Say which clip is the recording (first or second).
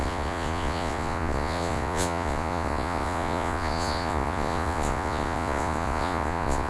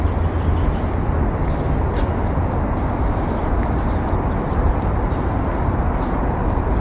second